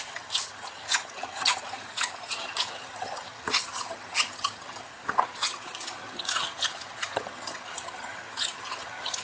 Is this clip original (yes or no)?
no